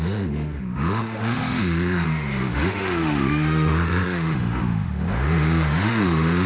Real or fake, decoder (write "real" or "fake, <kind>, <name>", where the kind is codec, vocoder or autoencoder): fake, autoencoder, DAC-VAE